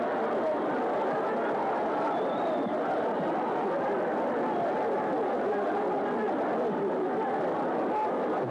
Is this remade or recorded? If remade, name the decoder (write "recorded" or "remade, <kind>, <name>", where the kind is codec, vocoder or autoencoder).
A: recorded